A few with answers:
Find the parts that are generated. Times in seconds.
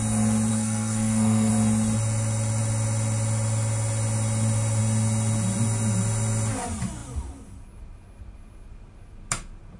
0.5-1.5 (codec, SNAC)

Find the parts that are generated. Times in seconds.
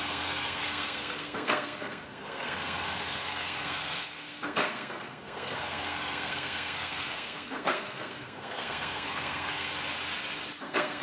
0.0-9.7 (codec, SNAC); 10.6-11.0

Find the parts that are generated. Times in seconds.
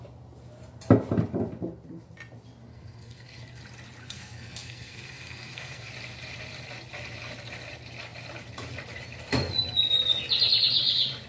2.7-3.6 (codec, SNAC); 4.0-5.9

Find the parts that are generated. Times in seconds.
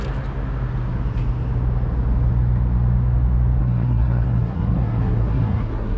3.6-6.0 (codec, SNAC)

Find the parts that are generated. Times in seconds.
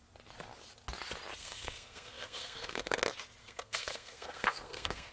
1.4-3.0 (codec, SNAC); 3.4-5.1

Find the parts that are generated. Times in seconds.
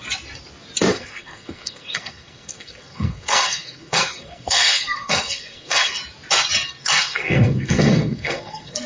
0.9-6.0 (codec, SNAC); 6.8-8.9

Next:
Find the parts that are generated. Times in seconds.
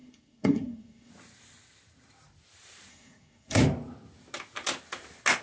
0.0-1.1 (codec, SNAC); 2.9-3.6